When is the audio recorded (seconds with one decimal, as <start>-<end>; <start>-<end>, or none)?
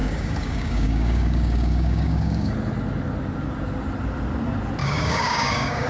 2.5-4.8